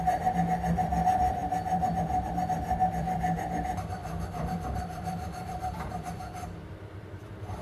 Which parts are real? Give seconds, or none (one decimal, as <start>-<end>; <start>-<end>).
none